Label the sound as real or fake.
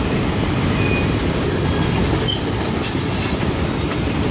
real